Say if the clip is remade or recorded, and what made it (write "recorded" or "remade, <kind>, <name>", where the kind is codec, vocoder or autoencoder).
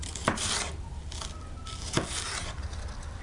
recorded